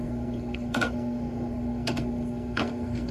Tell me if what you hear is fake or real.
fake